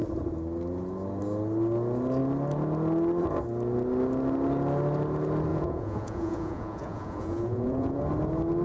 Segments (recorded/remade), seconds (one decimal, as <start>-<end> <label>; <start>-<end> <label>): 0.0-5.5 recorded; 5.5-8.0 remade; 8.0-8.6 recorded